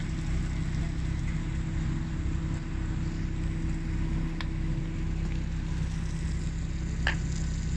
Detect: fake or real real